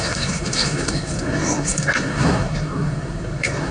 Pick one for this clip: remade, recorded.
remade